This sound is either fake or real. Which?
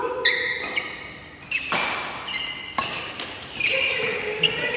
real